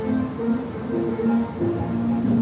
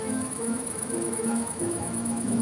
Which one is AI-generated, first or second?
second